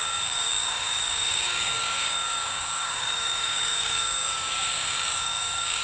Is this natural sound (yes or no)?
no